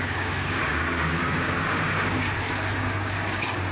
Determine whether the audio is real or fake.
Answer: fake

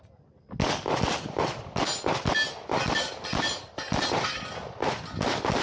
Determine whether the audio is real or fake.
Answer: real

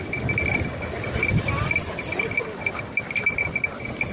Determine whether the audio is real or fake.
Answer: real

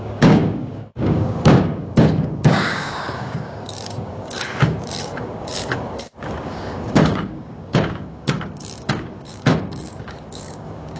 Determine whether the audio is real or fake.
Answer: fake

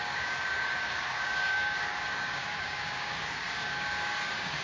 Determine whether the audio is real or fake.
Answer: fake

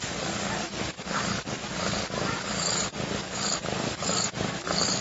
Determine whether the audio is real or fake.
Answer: fake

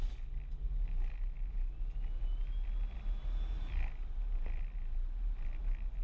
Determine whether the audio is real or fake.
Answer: real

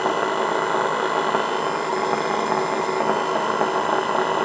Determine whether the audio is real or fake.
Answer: real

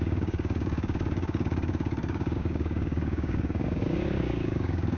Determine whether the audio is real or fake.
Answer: fake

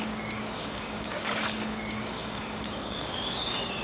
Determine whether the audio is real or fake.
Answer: fake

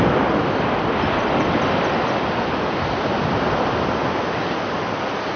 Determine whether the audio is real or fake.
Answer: real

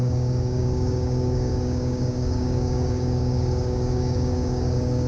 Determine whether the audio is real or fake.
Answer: fake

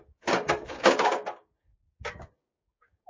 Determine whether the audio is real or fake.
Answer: fake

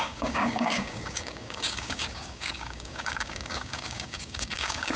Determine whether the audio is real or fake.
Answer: fake